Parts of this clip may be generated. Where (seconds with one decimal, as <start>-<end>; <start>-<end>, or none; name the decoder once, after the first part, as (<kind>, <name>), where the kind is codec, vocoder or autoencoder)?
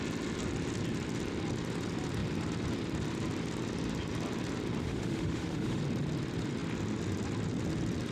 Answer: 4.8-5.8 (autoencoder, DAC-VAE)